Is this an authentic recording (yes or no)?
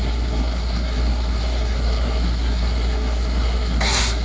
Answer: no